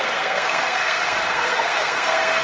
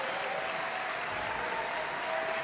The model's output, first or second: first